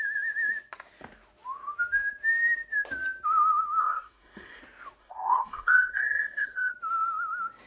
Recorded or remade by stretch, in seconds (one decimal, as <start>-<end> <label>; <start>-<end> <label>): 0.0-3.8 recorded; 3.8-4.6 remade; 4.6-5.0 recorded; 5.0-6.7 remade; 6.7-7.7 recorded